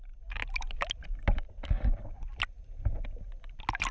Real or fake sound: real